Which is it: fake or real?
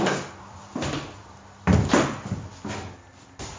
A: real